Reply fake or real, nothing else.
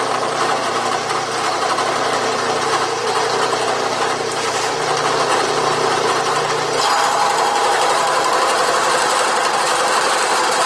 fake